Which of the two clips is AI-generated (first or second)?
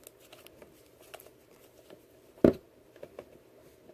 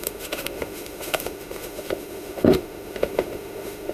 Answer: second